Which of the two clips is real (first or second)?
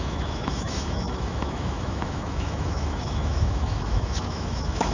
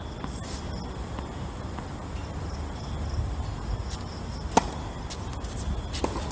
second